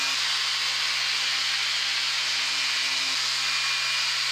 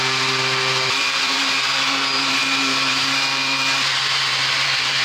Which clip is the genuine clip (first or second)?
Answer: first